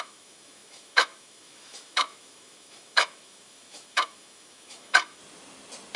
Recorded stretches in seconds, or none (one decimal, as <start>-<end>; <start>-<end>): 5.2-6.0